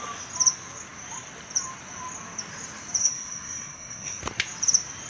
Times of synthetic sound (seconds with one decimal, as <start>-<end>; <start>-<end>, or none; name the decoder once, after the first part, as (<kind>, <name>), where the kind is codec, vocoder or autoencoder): 3.0-4.2 (codec, SNAC)